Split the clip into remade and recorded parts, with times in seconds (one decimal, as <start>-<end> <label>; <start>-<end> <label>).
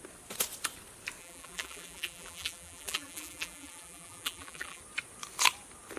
0.0-1.2 recorded; 1.2-4.8 remade; 4.8-6.0 recorded